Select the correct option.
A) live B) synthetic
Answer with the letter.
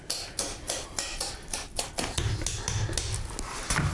A